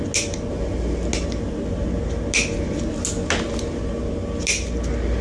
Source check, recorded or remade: recorded